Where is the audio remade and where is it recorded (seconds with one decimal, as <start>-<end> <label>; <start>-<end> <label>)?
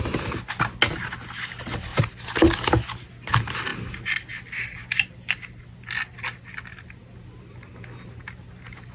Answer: 0.0-8.9 recorded